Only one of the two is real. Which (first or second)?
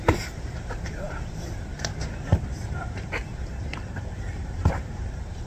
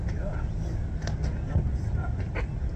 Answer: second